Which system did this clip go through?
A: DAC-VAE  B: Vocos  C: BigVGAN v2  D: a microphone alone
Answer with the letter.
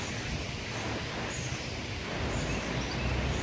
D